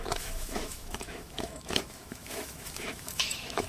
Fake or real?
fake